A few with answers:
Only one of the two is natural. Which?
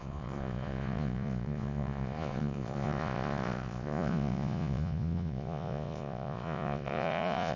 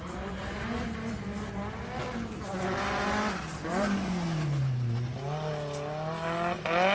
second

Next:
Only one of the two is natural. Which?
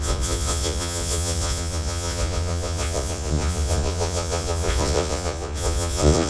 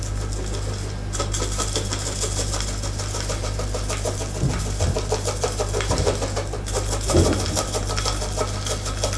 second